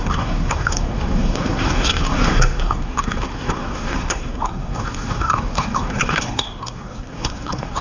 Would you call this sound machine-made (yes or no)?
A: yes